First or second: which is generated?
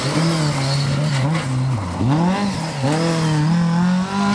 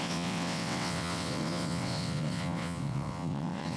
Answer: second